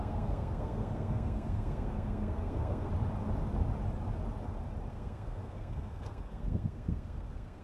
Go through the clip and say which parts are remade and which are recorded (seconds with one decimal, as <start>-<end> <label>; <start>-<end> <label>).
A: 0.0-2.9 remade; 2.9-4.9 recorded; 4.9-7.6 remade